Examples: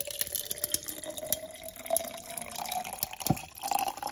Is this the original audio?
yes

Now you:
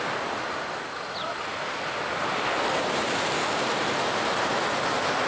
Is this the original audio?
yes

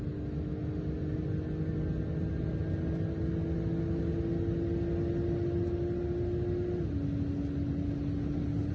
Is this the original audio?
yes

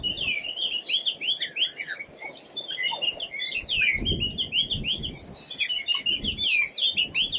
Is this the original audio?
yes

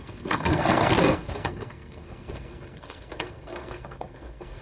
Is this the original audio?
no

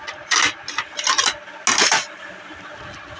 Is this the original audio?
yes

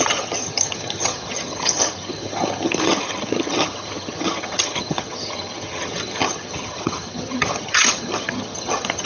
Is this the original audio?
no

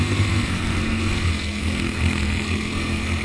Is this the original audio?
no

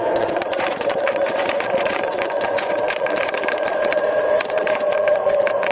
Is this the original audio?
no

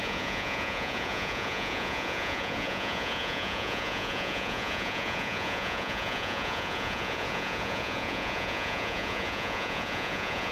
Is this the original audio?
no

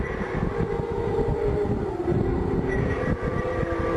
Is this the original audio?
yes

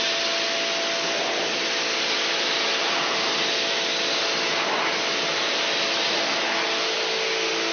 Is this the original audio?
yes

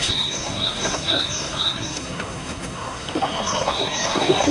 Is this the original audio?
no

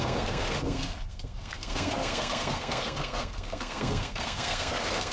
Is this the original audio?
no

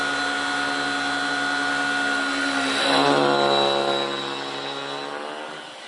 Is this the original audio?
yes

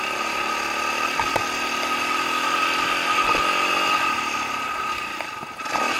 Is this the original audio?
yes